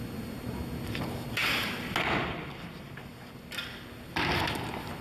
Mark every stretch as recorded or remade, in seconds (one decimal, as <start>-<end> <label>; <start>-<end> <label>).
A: 0.0-5.0 recorded